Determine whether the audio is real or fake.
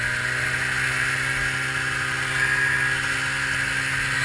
real